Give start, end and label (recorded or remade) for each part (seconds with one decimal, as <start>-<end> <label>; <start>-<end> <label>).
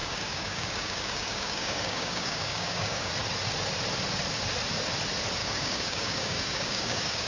0.0-3.1 remade; 3.1-5.4 recorded; 5.4-7.3 remade